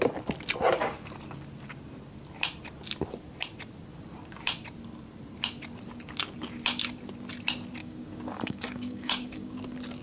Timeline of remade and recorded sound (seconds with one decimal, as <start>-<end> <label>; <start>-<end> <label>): 0.0-7.8 recorded; 7.8-9.6 remade; 9.6-10.0 recorded